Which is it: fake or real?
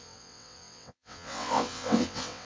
fake